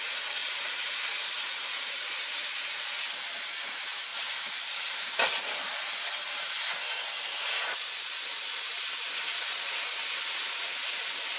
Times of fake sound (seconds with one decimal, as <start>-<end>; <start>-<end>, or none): 0.4-2.9; 4.1-5.6

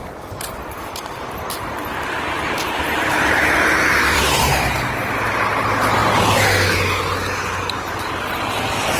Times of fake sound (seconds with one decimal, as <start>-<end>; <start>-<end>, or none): 0.6-5.0

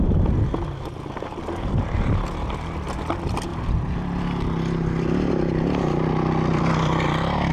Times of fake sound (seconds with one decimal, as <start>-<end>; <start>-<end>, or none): none

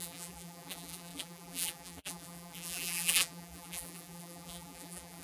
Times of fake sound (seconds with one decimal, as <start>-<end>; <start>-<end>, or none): 0.0-5.2

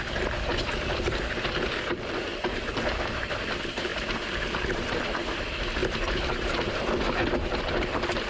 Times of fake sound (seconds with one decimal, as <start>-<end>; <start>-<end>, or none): 2.3-3.2; 3.9-5.0; 5.8-6.7

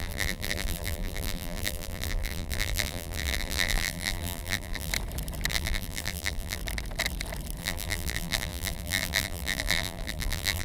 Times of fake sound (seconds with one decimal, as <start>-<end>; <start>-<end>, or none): 0.0-4.9; 5.5-6.6; 7.6-10.6

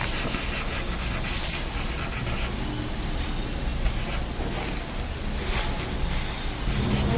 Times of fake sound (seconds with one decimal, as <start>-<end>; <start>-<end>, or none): none